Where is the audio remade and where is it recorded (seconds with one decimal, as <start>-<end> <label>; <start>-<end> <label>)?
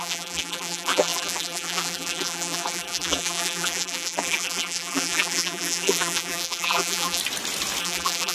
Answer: 0.0-7.2 remade; 7.2-7.8 recorded; 7.8-8.3 remade